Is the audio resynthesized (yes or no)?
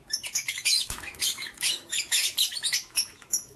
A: yes